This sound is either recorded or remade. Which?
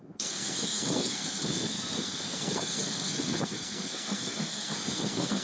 remade